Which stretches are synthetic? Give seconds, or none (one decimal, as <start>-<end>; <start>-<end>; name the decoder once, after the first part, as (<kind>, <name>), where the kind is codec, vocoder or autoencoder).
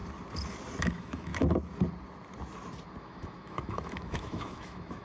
0.8-1.3 (autoencoder, DAC-VAE); 3.0-5.0